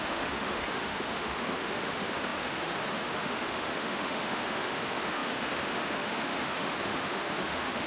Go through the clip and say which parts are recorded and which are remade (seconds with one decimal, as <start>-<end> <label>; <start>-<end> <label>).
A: 0.0-7.9 remade